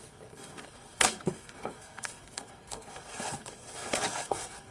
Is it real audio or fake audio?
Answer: fake